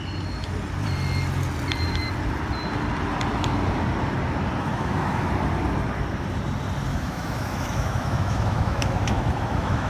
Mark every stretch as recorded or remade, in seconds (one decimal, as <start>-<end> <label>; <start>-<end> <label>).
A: 0.0-4.7 recorded; 4.7-5.3 remade; 5.3-6.9 recorded; 6.9-9.9 remade